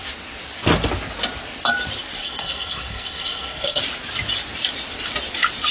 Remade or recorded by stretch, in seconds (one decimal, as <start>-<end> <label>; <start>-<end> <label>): 0.0-2.2 recorded; 2.2-3.8 remade; 3.8-5.7 recorded